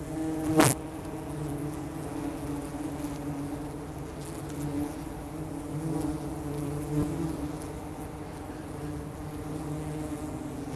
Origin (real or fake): real